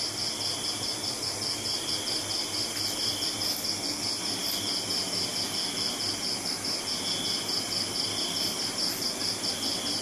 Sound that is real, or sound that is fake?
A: real